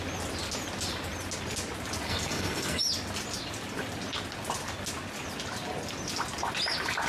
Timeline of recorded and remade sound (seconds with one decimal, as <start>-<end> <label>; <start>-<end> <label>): 0.0-2.1 recorded; 2.1-2.8 remade; 2.8-7.1 recorded